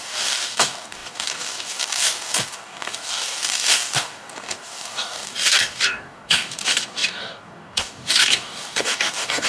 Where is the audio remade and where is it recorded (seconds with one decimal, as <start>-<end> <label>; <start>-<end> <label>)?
0.0-9.5 remade